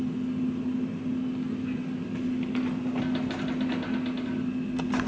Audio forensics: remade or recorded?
recorded